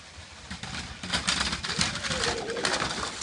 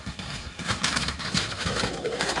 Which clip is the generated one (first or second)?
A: second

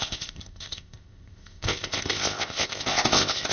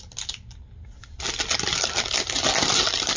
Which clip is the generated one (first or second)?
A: first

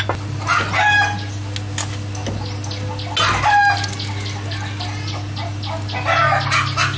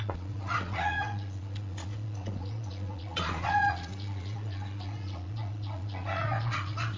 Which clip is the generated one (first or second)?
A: second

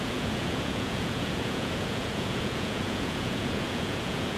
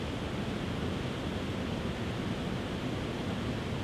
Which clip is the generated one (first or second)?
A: first